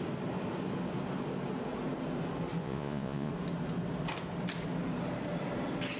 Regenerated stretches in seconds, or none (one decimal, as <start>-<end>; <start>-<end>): 2.6-3.3